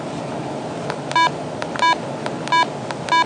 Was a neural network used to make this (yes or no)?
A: no